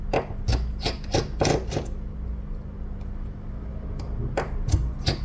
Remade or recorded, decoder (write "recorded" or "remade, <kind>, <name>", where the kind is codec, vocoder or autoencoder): recorded